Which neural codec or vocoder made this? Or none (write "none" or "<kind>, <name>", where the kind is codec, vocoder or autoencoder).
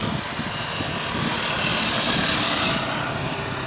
none